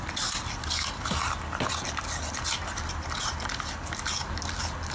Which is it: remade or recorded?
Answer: recorded